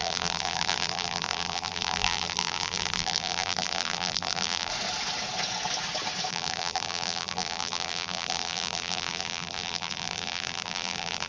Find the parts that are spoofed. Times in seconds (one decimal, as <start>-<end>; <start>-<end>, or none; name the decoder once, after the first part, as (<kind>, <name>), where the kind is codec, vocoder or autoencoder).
0.0-4.7 (vocoder, BigVGAN v2); 6.3-11.3

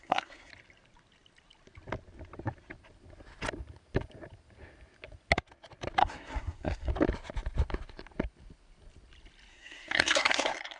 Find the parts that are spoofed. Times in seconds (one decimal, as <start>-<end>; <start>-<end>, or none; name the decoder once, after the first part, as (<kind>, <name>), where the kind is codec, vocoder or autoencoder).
0.0-0.5 (codec, SNAC); 6.0-6.9; 9.5-10.8